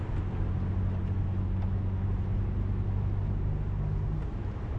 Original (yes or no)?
yes